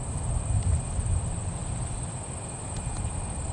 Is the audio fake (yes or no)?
no